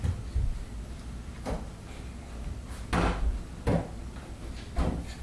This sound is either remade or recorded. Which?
remade